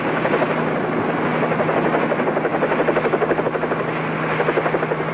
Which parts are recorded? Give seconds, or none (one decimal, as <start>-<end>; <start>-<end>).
0.0-5.1